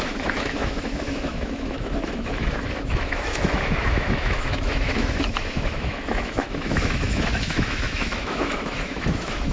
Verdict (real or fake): fake